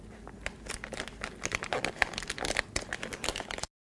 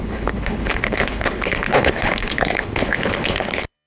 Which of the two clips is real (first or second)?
first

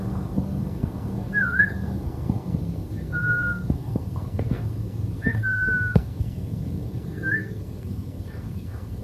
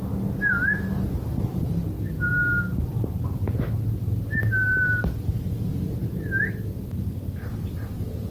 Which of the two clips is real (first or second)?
second